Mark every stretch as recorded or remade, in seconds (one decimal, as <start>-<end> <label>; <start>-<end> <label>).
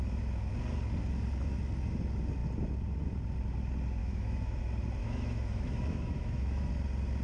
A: 0.0-4.0 recorded; 4.0-4.6 remade; 4.6-5.0 recorded; 5.0-6.7 remade; 6.7-7.2 recorded